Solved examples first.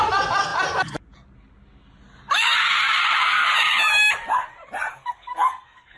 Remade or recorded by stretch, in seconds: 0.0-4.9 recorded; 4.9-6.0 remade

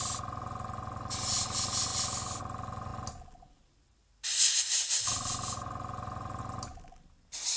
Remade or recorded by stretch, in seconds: 0.0-7.6 recorded

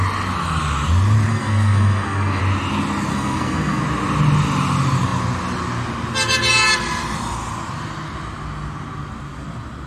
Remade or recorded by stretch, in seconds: 0.0-1.3 recorded; 1.3-2.4 remade; 2.4-3.1 recorded; 3.1-3.8 remade; 3.8-9.9 recorded

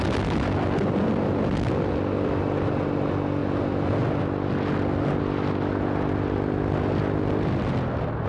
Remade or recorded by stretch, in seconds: 0.0-8.3 recorded